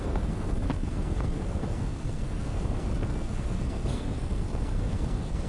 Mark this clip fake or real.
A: fake